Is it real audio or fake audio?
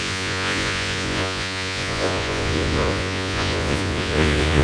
fake